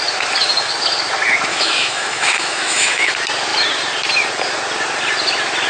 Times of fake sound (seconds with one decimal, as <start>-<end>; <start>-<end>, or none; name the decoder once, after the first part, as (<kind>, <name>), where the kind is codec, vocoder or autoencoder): 1.5-3.1 (autoencoder, DAC-VAE)